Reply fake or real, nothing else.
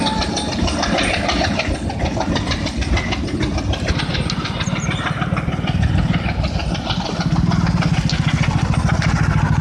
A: real